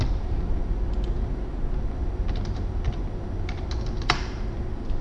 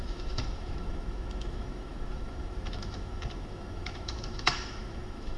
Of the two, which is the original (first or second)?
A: first